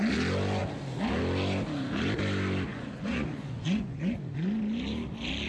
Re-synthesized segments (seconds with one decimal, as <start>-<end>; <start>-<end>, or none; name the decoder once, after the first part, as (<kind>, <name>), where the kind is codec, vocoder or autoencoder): 2.7-4.1 (vocoder, Vocos)